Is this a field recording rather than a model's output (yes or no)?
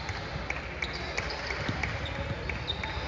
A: yes